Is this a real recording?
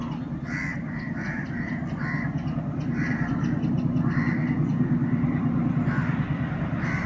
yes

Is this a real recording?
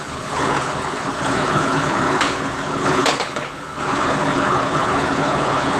no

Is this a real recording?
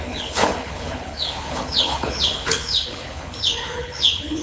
no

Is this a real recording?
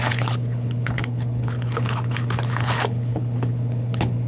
no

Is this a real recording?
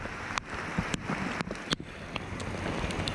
yes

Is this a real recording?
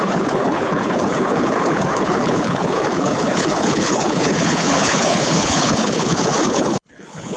no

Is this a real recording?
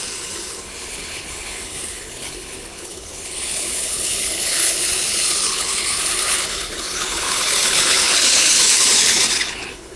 no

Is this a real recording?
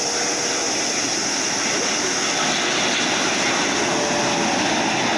yes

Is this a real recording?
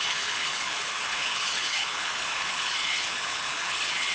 no